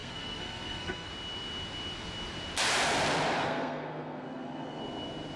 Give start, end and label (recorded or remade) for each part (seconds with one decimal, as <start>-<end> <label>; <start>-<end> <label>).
0.0-1.1 remade; 1.1-3.4 recorded; 3.4-4.8 remade; 4.8-5.4 recorded